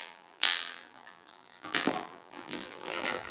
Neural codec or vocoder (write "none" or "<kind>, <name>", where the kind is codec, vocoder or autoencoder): vocoder, BigVGAN v2